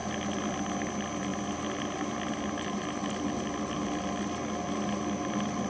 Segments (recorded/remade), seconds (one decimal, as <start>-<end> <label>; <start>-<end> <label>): 0.0-5.7 recorded